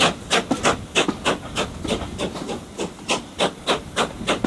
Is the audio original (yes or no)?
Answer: yes